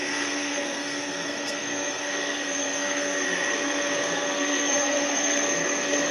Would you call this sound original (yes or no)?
no